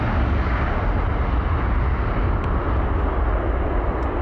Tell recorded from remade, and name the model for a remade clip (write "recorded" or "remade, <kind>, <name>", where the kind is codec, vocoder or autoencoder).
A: recorded